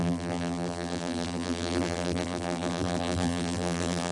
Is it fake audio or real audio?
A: fake